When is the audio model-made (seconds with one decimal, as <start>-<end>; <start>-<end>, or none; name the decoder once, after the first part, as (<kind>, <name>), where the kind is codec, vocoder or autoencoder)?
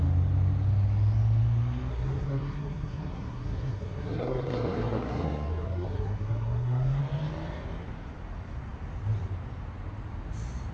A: 1.9-7.0 (codec, SNAC)